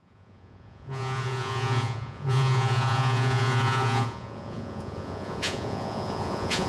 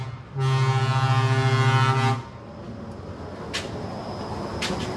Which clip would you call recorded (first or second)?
second